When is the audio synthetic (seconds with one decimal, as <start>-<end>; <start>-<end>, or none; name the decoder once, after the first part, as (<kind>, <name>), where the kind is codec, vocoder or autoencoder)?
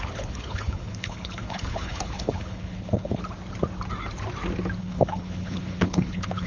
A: 0.0-3.2 (codec, HILCodec); 4.8-6.5